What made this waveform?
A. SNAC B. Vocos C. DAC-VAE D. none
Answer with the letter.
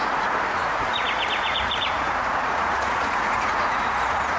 B